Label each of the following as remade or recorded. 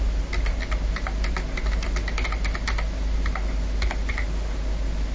recorded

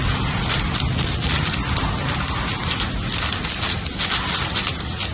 remade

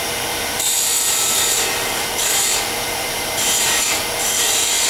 remade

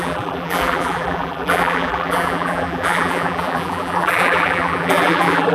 remade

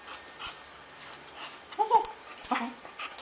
recorded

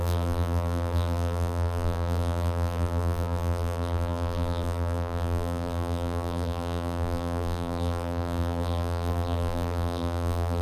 remade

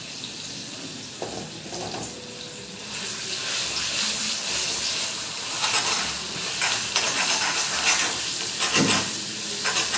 remade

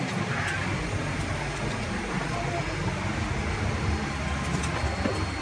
recorded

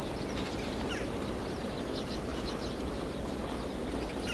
remade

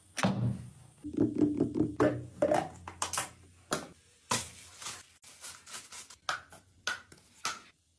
recorded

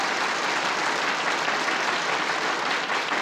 recorded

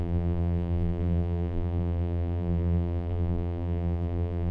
remade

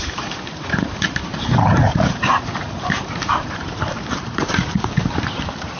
remade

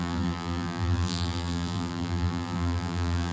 remade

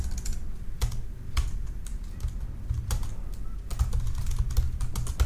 recorded